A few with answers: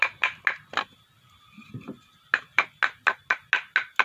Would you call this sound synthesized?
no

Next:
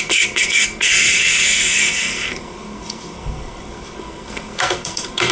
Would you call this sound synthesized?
yes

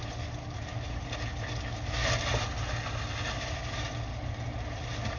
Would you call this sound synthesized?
no